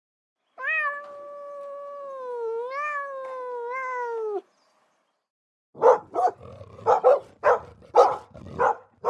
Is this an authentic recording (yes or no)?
yes